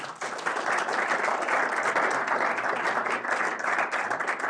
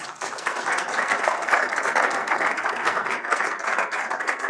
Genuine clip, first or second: first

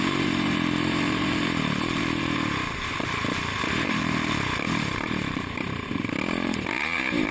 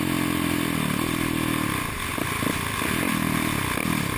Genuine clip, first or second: second